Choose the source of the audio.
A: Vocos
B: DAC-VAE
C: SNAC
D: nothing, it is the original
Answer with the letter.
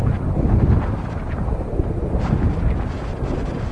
D